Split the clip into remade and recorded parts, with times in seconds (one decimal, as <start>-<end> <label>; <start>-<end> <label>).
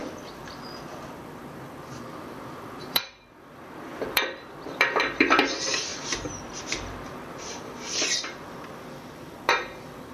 0.0-5.9 remade; 5.9-6.6 recorded; 6.6-10.1 remade